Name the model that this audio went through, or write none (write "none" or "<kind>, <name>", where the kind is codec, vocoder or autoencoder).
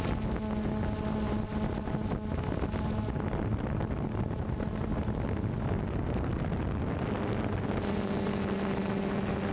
none